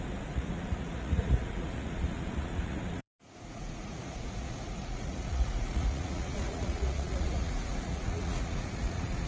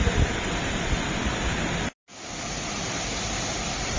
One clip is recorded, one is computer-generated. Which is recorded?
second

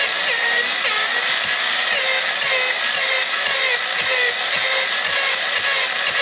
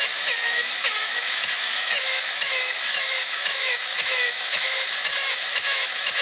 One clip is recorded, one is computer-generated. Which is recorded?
first